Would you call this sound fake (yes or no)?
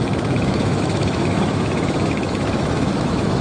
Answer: yes